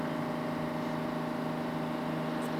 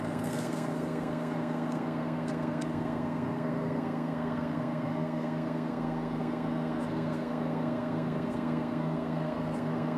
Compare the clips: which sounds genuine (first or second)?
first